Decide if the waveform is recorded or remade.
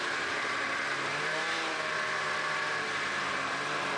remade